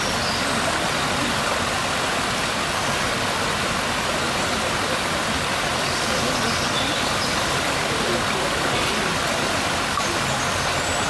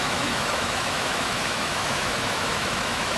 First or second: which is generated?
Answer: second